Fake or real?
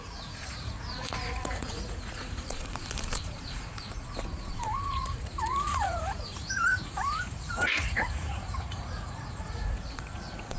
fake